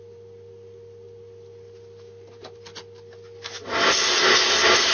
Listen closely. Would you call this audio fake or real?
real